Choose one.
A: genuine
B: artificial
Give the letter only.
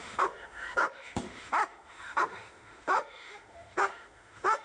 B